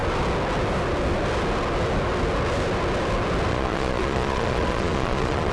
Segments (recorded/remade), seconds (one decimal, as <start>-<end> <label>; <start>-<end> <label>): 0.0-3.5 recorded; 3.5-5.5 remade